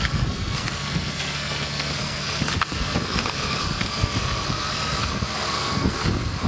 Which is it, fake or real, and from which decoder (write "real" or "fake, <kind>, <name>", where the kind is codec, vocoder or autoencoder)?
fake, codec, SNAC